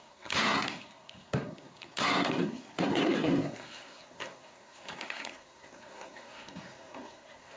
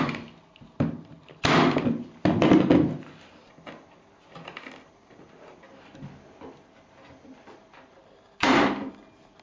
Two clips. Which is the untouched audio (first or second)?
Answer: second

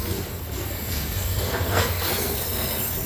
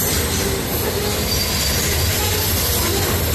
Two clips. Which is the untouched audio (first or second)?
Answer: second